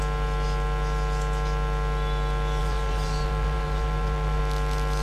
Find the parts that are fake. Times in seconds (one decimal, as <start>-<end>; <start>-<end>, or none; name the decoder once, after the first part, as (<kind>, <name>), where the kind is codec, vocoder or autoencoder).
2.6-4.4 (vocoder, BigVGAN v2)